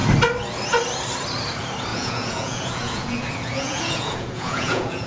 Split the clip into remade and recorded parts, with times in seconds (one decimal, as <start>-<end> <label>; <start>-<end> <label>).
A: 0.0-1.9 recorded; 1.9-5.1 remade